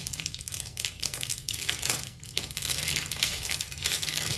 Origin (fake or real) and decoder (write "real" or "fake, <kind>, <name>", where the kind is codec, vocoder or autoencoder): fake, codec, SNAC